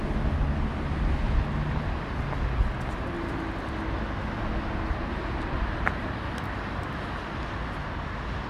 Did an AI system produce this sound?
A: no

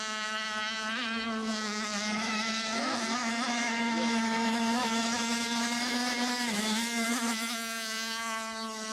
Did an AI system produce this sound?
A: yes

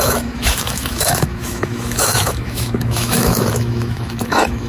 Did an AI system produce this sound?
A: yes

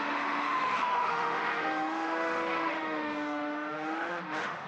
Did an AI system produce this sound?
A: yes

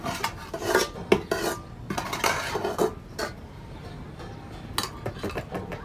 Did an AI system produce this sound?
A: no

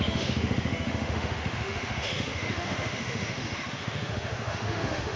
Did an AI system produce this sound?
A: yes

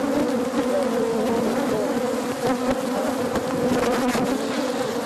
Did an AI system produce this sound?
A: no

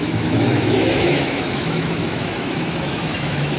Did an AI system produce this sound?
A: yes